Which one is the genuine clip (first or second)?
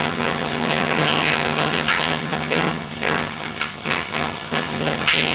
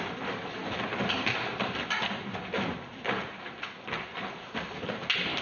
second